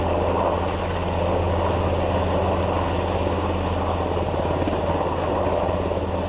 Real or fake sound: real